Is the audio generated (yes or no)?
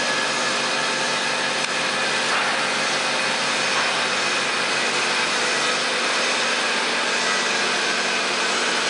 no